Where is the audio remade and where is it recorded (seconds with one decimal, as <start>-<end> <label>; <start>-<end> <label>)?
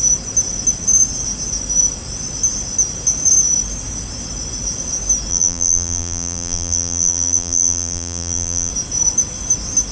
0.0-5.3 recorded; 5.3-8.7 remade; 8.7-9.9 recorded